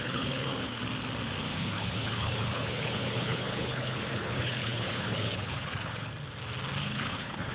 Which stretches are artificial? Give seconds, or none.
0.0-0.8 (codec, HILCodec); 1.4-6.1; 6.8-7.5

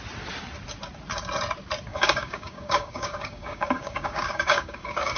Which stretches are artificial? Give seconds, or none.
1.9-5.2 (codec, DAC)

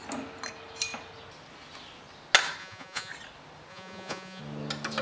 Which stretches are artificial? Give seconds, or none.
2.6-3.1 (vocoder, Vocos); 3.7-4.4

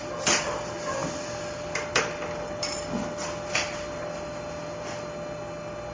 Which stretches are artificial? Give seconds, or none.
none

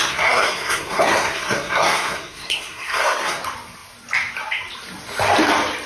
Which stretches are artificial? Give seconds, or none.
0.0-3.4 (codec, SNAC)